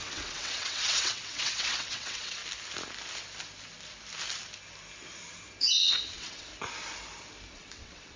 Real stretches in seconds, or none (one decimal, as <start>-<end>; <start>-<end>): 2.4-6.1; 6.5-7.5